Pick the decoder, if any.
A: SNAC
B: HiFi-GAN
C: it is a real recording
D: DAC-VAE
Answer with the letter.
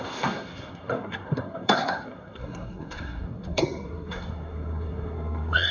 A